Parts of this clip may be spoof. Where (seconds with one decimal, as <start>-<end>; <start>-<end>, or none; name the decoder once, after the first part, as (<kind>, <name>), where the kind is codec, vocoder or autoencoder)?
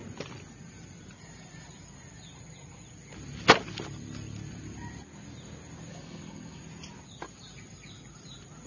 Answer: 5.9-6.6 (codec, DAC)